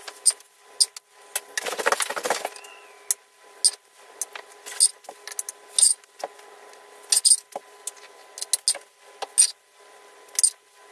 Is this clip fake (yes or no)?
no